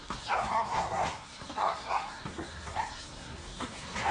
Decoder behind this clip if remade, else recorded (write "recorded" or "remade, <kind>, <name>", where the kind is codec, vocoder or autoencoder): remade, codec, SNAC